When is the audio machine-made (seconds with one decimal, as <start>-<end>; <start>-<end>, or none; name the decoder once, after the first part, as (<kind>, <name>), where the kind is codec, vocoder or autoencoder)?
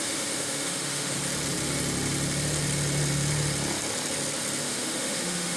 0.0-1.2 (autoencoder, DAC-VAE); 4.6-5.6